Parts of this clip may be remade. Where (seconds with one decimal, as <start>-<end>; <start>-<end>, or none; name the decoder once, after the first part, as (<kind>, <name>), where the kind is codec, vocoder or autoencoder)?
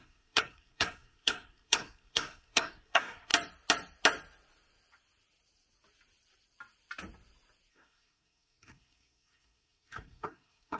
0.0-3.3 (codec, SNAC); 7.7-10.8